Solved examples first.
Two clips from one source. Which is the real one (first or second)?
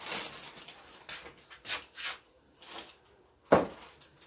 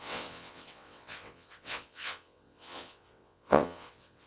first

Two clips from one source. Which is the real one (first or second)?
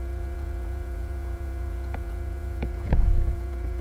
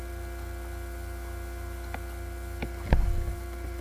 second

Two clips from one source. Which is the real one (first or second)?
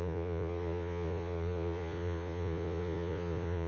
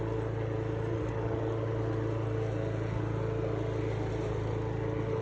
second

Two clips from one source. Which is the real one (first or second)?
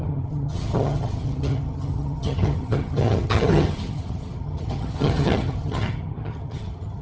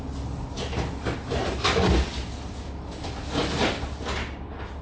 second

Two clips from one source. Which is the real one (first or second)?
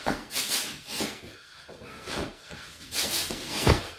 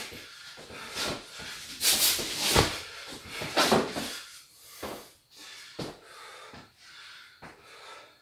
second